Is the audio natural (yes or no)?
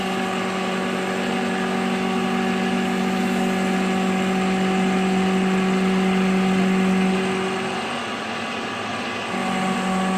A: yes